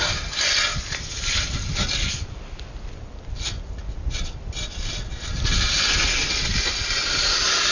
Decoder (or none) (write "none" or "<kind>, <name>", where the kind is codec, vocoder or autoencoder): none